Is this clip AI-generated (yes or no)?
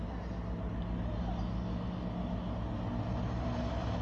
no